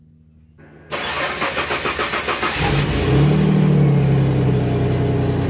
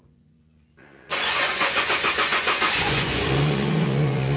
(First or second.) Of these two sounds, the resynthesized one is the second